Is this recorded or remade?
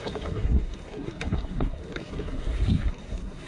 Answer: remade